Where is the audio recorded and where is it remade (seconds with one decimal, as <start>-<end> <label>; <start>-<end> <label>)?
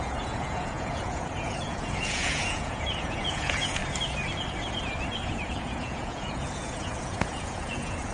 0.0-3.8 remade; 3.8-5.3 recorded; 5.3-8.1 remade